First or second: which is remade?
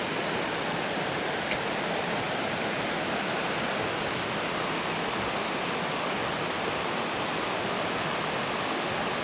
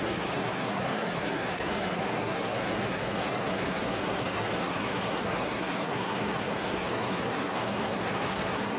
second